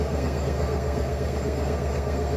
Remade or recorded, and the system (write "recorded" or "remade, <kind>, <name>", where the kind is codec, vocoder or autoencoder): remade, codec, SNAC